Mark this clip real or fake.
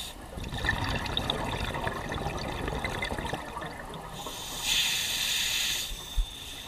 real